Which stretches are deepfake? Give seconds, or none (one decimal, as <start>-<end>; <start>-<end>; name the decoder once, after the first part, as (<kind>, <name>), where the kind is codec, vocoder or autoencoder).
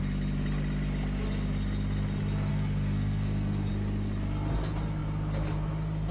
2.5-3.7 (codec, SNAC)